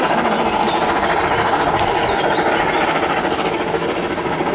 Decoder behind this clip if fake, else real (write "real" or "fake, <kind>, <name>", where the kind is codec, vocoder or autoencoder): real